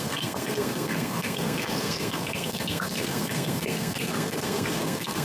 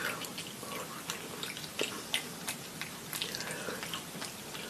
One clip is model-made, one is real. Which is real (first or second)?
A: second